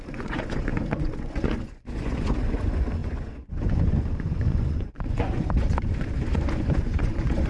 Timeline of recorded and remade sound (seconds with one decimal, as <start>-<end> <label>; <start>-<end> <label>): 0.0-7.5 remade